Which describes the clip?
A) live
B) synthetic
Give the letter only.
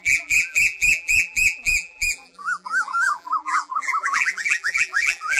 B